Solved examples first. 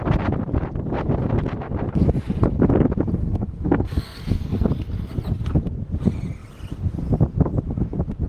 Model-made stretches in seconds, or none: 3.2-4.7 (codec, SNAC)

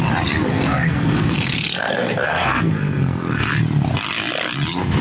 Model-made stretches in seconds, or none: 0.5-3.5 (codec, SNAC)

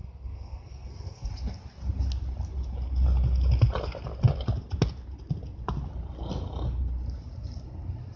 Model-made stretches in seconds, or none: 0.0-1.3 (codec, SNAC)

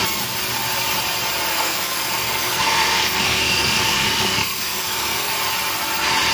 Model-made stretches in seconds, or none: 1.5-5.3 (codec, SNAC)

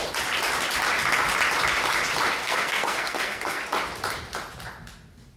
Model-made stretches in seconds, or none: 2.4-3.6 (codec, SNAC)

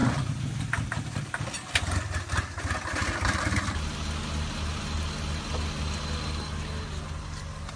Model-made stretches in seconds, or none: none